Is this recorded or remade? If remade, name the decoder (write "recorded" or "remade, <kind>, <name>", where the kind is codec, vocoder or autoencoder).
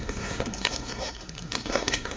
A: remade, codec, SNAC